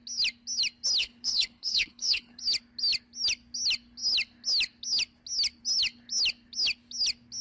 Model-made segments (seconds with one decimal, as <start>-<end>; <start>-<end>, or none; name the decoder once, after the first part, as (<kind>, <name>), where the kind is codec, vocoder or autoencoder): 1.0-2.4 (codec, HILCodec)